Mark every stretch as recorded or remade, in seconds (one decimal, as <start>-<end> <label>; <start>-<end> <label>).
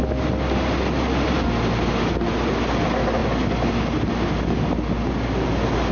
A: 0.0-5.9 recorded